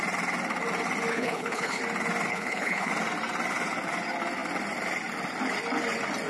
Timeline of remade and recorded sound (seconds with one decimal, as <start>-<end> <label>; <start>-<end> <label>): 0.0-1.1 recorded; 1.1-1.8 remade; 1.8-2.3 recorded; 2.3-2.9 remade; 2.9-6.3 recorded